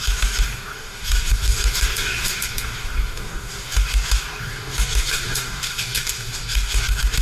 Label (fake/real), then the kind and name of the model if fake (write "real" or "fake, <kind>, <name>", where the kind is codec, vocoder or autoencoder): fake, codec, DAC